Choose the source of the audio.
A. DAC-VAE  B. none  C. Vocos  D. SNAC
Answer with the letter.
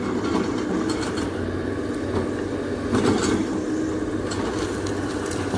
B